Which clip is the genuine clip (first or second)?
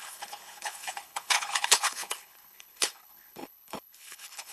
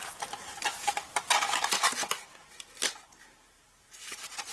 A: second